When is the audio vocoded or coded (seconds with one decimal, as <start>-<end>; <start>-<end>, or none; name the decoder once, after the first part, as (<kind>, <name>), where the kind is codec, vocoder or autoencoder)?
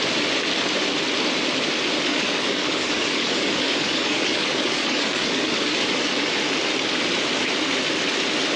2.1-6.3 (codec, DAC)